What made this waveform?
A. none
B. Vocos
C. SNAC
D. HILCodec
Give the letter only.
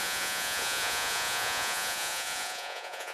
B